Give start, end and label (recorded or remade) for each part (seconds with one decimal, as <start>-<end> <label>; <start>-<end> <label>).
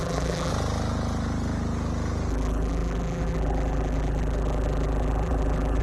0.0-0.5 remade; 0.5-2.3 recorded; 2.3-5.8 remade